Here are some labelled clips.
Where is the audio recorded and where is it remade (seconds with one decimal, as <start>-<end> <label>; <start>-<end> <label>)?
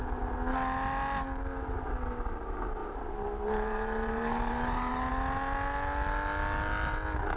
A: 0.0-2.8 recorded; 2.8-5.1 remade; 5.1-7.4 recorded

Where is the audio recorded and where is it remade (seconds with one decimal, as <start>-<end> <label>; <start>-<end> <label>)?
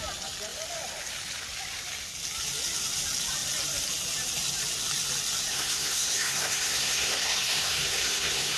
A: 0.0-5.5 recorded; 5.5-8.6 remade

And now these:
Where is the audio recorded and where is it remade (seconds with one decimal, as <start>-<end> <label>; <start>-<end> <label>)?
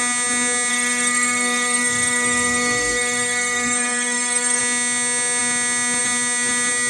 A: 0.0-0.7 recorded; 0.7-4.6 remade; 4.6-6.9 recorded